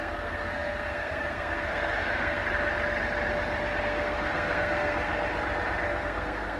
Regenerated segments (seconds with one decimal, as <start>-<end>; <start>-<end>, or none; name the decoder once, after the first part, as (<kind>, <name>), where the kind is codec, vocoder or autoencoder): 0.0-2.4 (codec, SNAC); 3.8-5.1; 5.9-6.6